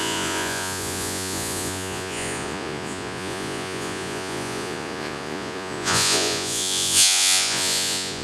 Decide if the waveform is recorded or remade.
remade